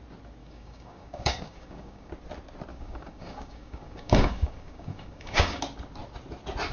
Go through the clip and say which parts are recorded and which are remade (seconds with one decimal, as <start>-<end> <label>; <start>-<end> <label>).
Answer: 0.0-0.4 recorded; 0.4-2.1 remade; 2.1-2.7 recorded; 2.7-5.6 remade; 5.6-6.7 recorded